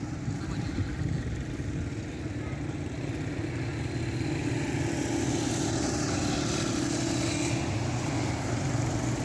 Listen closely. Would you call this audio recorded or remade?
recorded